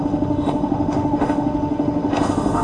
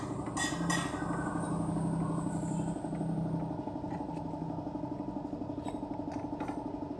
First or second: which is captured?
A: second